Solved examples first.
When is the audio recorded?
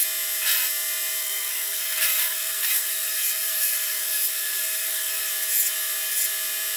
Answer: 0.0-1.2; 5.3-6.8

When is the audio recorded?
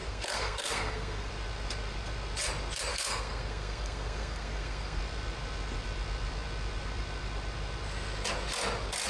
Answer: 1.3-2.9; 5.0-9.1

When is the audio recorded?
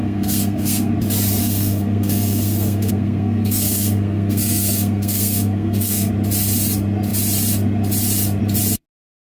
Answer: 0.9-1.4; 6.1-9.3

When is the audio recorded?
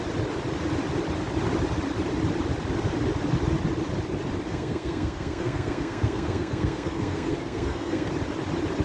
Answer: 0.0-4.5; 8.1-8.8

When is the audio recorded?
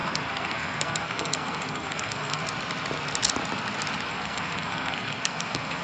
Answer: 2.4-4.1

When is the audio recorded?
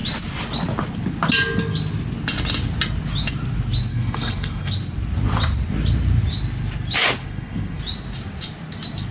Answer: 0.0-3.9; 4.7-7.2; 7.8-9.1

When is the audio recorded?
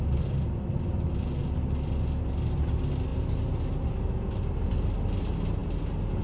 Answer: 0.0-6.2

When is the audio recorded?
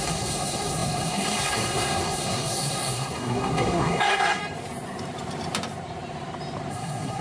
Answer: 4.4-6.7